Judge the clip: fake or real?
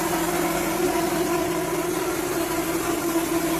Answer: real